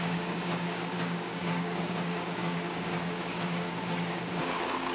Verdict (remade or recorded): remade